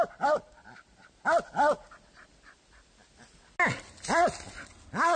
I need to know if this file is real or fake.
real